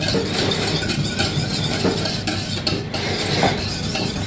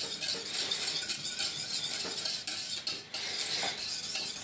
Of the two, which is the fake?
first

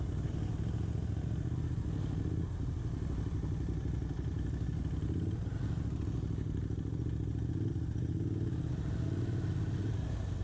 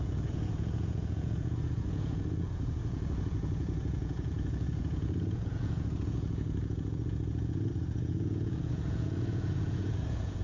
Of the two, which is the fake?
second